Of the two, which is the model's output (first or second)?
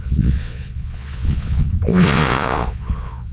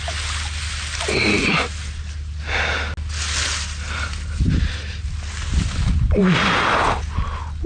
first